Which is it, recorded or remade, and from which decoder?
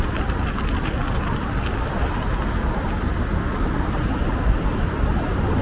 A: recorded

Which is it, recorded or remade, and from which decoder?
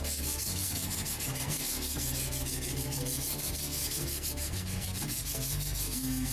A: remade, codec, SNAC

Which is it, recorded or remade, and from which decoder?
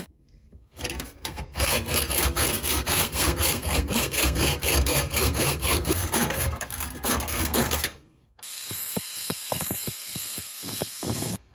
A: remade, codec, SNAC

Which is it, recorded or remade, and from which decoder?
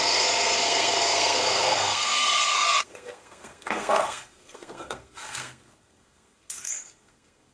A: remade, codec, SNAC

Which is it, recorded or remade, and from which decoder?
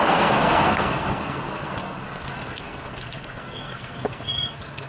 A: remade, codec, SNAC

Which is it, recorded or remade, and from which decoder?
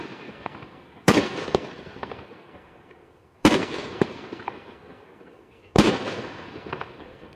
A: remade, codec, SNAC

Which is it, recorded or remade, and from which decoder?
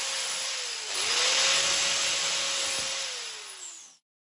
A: recorded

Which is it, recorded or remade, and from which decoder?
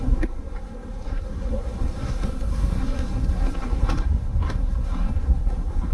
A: remade, codec, SNAC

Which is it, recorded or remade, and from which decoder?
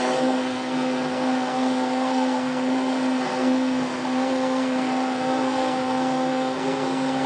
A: remade, codec, SNAC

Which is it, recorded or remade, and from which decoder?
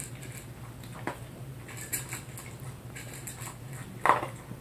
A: recorded